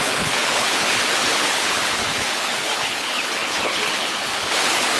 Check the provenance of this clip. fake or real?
fake